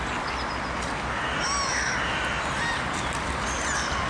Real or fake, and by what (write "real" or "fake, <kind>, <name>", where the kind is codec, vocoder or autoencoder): real